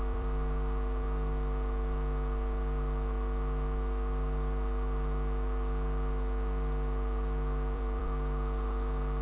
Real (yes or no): no